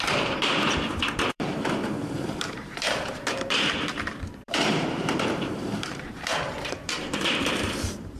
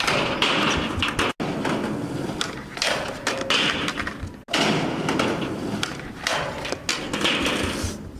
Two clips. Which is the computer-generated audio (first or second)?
first